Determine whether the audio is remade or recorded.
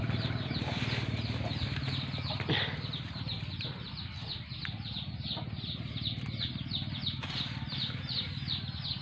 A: recorded